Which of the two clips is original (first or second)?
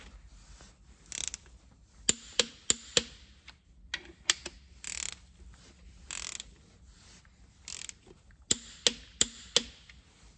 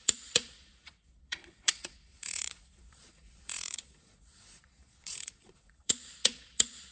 first